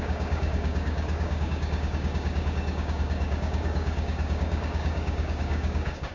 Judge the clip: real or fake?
fake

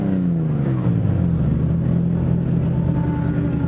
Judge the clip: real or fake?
real